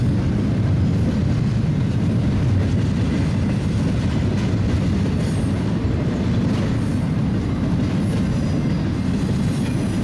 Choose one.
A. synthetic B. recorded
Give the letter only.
B